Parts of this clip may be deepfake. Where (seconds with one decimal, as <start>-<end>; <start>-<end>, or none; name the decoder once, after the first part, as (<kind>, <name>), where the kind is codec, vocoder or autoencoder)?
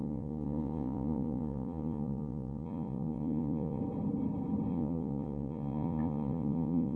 0.0-3.8 (vocoder, Vocos); 4.7-7.0